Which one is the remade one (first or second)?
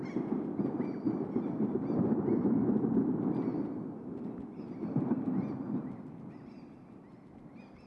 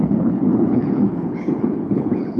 second